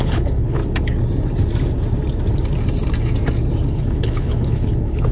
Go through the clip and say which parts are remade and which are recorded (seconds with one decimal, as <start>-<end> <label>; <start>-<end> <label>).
0.0-0.6 remade; 0.6-3.7 recorded; 3.7-5.1 remade